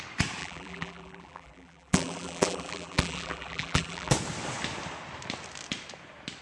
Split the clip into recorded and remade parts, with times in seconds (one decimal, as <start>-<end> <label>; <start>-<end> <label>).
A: 0.0-0.4 recorded; 0.4-4.1 remade; 4.1-6.4 recorded